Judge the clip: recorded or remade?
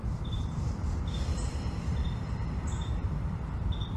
remade